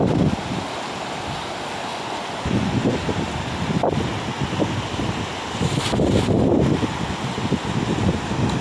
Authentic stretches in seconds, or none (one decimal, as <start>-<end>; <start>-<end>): 0.0-1.9; 2.8-8.6